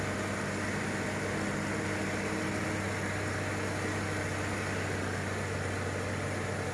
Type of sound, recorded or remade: recorded